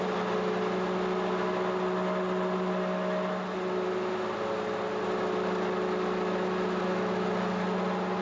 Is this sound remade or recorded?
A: recorded